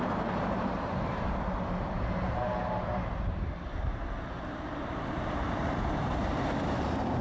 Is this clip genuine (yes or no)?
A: no